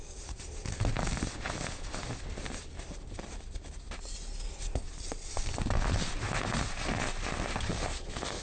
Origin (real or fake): real